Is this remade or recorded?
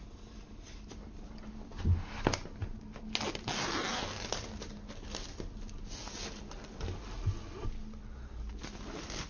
recorded